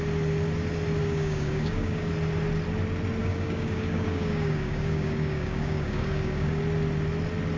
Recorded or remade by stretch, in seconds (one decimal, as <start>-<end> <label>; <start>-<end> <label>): 0.0-1.0 recorded; 1.0-2.1 remade; 2.1-3.2 recorded; 3.2-6.6 remade; 6.6-7.6 recorded